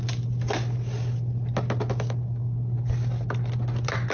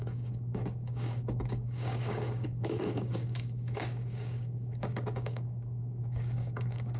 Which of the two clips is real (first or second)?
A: first